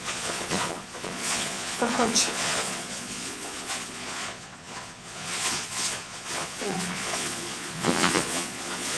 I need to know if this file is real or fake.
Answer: fake